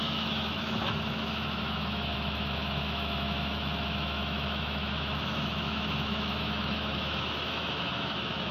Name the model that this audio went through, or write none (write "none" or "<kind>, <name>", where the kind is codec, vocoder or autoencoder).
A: autoencoder, DAC-VAE